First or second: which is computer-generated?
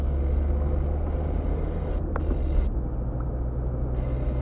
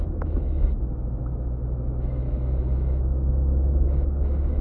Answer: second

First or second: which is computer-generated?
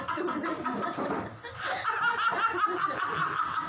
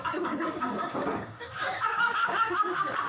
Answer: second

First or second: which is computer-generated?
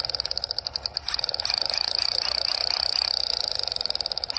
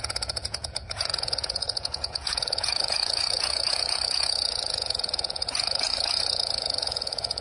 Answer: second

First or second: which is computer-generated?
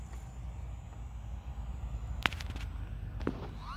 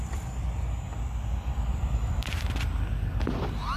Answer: second